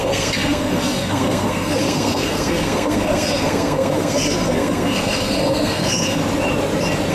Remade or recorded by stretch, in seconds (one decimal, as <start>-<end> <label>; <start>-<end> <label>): 0.0-6.2 remade; 6.2-7.1 recorded